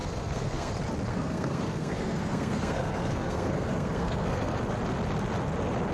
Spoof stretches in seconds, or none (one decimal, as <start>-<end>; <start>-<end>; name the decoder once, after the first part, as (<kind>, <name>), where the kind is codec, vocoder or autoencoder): 0.0-0.7 (codec, SNAC); 1.1-4.6